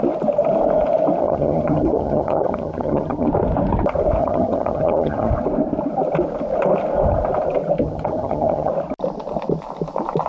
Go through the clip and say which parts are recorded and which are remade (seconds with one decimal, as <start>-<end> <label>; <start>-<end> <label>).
0.0-1.2 recorded; 1.2-3.3 remade; 3.3-4.2 recorded; 4.2-5.3 remade; 5.3-7.8 recorded; 7.8-8.7 remade; 8.7-10.3 recorded